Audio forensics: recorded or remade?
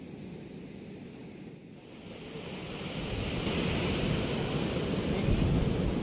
recorded